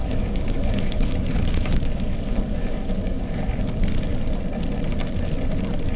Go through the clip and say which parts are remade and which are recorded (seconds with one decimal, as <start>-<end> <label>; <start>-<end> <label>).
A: 0.0-3.6 remade; 3.6-6.0 recorded